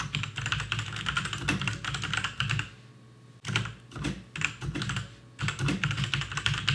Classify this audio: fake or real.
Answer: real